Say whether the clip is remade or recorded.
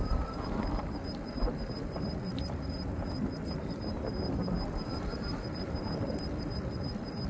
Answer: recorded